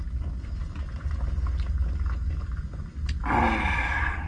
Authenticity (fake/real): real